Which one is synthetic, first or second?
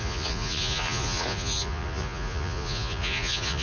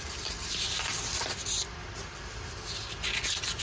first